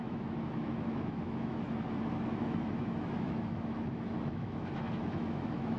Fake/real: fake